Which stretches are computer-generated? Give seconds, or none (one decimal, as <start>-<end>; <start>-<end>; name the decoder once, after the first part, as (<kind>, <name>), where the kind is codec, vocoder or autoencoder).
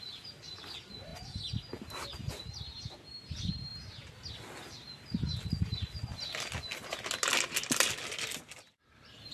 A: none